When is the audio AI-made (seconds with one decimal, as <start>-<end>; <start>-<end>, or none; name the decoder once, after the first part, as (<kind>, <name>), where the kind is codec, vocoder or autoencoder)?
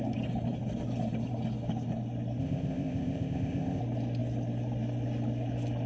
2.4-3.8 (codec, ZipCodec)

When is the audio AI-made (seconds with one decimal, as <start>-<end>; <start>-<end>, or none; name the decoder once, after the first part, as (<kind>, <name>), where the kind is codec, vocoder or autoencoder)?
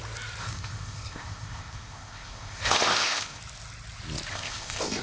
0.4-3.4 (codec, ZipCodec); 4.3-5.0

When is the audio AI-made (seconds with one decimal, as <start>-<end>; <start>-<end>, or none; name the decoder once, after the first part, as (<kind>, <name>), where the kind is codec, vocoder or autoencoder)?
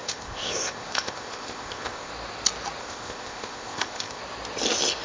0.0-2.1 (codec, ZipCodec); 2.8-4.2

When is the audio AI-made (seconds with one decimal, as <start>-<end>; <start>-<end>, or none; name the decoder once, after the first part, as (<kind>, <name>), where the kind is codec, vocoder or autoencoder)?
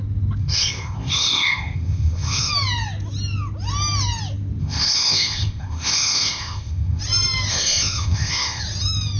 0.4-2.5 (codec, ZipCodec); 4.6-7.0; 7.5-8.6